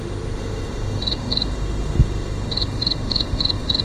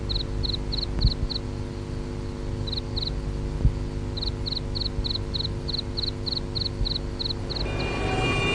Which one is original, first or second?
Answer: second